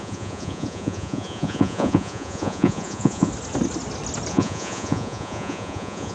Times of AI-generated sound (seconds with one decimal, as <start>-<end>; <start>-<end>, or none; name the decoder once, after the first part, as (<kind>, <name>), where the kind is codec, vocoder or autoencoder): 0.0-3.3 (vocoder, Vocos); 4.3-6.1